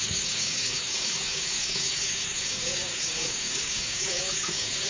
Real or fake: fake